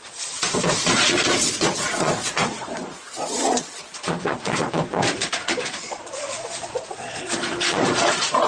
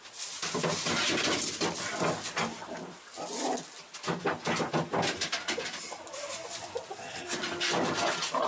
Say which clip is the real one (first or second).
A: second